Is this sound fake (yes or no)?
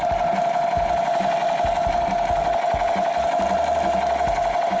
no